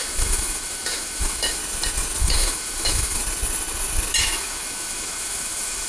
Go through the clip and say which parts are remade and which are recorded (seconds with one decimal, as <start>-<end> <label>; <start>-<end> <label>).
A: 0.0-1.6 remade; 1.6-2.2 recorded; 2.2-3.2 remade; 3.2-4.2 recorded; 4.2-5.9 remade